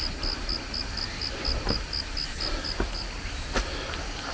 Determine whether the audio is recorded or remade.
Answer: recorded